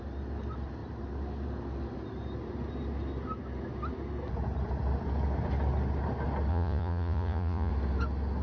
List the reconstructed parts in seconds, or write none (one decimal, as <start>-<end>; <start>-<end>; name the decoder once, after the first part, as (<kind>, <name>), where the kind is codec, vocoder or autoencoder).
6.5-7.7 (vocoder, Vocos)